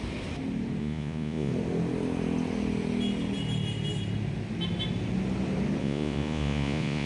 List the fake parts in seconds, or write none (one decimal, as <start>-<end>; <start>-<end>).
0.8-1.5; 5.8-7.1